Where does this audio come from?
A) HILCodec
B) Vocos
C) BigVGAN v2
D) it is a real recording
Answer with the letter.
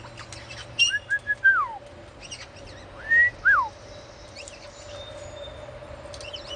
D